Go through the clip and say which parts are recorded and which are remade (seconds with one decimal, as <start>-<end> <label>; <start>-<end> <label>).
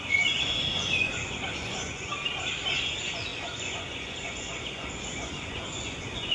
0.0-2.1 remade; 2.1-2.7 recorded; 2.7-6.3 remade